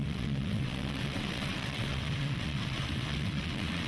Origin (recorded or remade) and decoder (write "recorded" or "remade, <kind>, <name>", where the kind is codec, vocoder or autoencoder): remade, vocoder, WaveNeXt